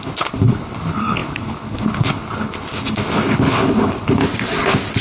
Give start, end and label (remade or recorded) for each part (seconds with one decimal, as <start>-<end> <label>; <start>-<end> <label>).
0.0-4.2 remade; 4.2-5.0 recorded